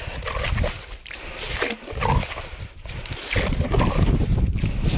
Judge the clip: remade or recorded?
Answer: recorded